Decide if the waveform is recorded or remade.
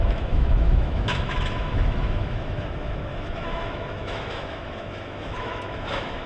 remade